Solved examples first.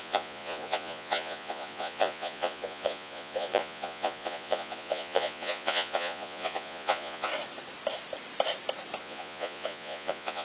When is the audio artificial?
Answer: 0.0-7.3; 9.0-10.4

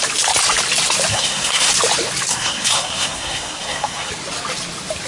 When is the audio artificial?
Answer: 1.1-1.7; 2.3-4.1

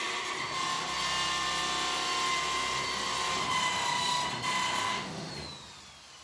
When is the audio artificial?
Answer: 4.8-5.3

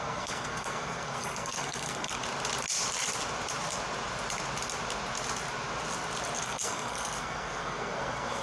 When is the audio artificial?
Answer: 0.0-2.2; 6.4-8.4